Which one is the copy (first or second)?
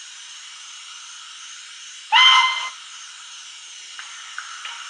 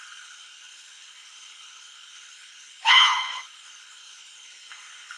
second